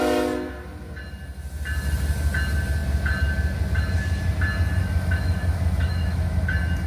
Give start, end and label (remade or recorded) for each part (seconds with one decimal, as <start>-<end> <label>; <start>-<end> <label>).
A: 0.0-4.8 recorded; 4.8-6.4 remade; 6.4-6.9 recorded